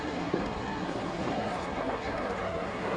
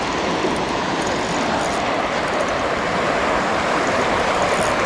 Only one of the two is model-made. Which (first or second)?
first